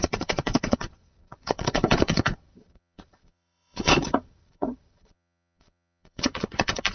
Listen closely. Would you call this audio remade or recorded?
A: remade